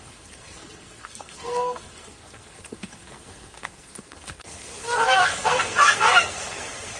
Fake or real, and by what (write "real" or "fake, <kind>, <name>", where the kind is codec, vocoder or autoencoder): fake, codec, SNAC